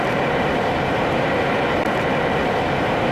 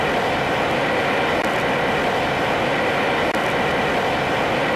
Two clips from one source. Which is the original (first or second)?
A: second